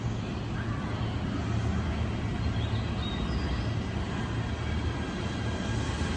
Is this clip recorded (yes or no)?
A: yes